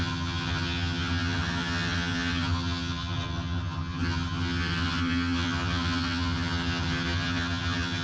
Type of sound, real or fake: fake